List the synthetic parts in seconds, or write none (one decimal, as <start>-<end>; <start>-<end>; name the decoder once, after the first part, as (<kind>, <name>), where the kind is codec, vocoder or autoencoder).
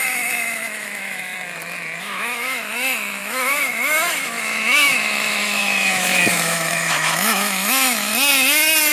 0.0-1.3 (autoencoder, DAC-VAE); 2.0-8.1